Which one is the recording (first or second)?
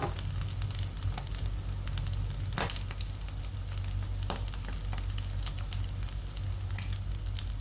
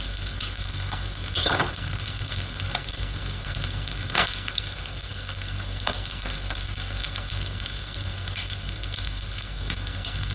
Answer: first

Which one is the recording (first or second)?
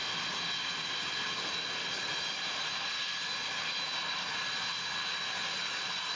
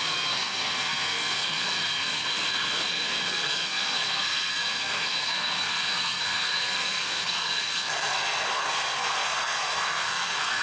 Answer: first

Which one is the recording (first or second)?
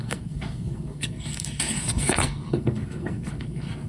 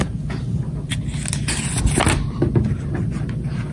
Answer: second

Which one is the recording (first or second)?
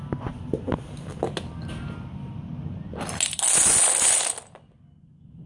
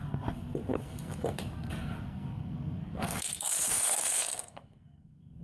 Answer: first